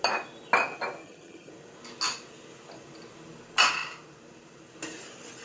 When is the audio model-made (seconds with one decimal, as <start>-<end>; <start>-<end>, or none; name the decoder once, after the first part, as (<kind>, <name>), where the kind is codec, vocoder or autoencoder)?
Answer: 1.0-1.5 (vocoder, HiFi-GAN)